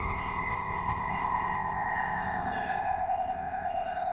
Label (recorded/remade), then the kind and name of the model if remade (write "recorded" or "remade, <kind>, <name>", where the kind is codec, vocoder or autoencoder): remade, codec, ZipCodec